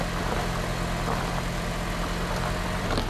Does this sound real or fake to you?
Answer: real